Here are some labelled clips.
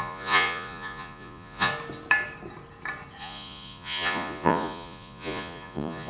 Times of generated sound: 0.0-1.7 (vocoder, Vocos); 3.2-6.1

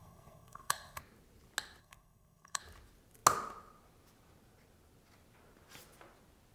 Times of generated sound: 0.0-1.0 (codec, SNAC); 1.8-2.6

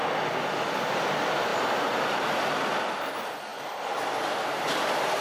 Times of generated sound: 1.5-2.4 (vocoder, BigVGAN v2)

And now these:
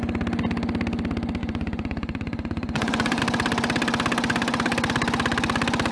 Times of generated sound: 1.4-3.2 (vocoder, Vocos)

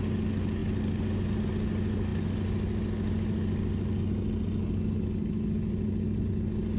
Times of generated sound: none

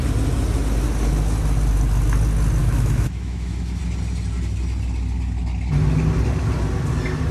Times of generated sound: 2.6-3.8 (autoencoder, DAC-VAE)